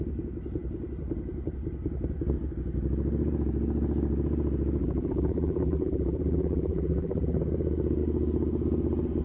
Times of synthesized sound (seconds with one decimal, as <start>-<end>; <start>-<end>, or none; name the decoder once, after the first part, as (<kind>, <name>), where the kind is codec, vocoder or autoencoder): 4.8-7.4 (vocoder, BigVGAN v2)